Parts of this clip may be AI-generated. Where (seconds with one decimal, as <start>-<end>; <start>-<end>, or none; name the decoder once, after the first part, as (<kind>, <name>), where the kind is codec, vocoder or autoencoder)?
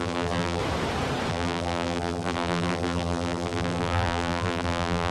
0.0-0.6 (vocoder, BigVGAN v2); 1.3-5.1